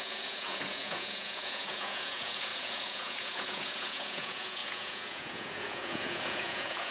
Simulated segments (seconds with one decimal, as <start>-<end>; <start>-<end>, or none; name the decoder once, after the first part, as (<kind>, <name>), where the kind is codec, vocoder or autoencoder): 0.0-6.9 (vocoder, Vocos)